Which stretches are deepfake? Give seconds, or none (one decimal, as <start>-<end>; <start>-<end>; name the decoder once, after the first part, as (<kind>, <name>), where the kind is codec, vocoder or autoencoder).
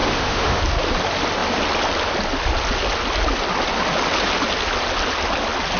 0.0-0.6 (autoencoder, DAC-VAE)